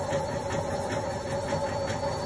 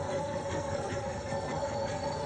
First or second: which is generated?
second